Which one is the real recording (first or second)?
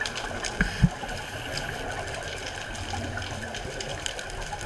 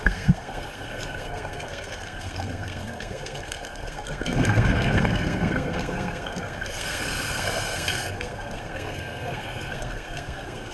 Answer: first